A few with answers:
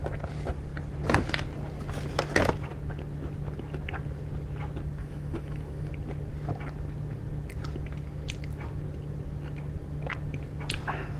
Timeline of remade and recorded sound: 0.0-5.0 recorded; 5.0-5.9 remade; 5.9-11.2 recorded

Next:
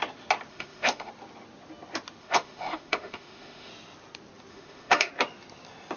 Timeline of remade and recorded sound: 0.0-0.5 recorded; 0.5-1.1 remade; 1.1-2.2 recorded; 2.2-3.7 remade; 3.7-4.5 recorded; 4.5-5.1 remade; 5.1-6.0 recorded

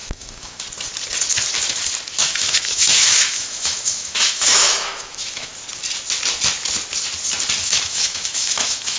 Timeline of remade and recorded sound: 0.0-0.6 remade; 0.6-2.2 recorded; 2.2-5.5 remade; 5.5-7.6 recorded; 7.6-9.0 remade

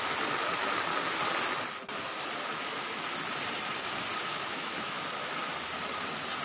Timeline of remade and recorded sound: 0.0-4.3 recorded; 4.3-5.0 remade; 5.0-6.4 recorded

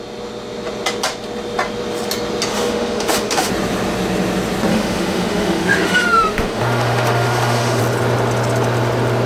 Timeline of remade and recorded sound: 0.0-2.5 recorded; 2.5-3.5 remade; 3.5-4.7 recorded; 4.7-7.8 remade; 7.8-9.3 recorded

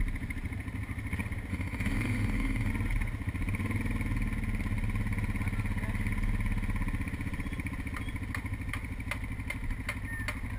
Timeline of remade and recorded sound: 0.0-1.5 recorded; 1.5-2.7 remade; 2.7-10.6 recorded

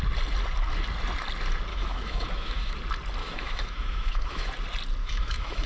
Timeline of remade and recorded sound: 0.0-1.7 recorded; 1.7-2.7 remade; 2.7-3.2 recorded; 3.2-4.5 remade; 4.5-5.0 recorded; 5.0-5.7 remade